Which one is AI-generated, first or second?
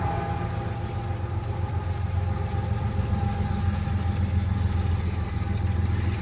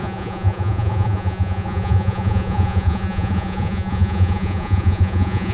second